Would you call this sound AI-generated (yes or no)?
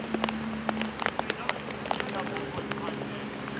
no